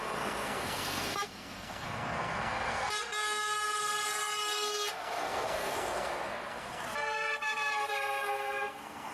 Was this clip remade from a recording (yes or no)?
yes